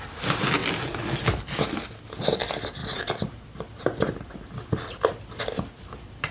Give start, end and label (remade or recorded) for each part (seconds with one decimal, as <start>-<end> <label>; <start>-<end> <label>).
0.0-6.3 recorded